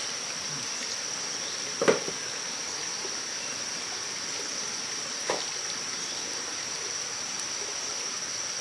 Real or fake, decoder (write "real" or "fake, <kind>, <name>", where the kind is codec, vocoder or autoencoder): real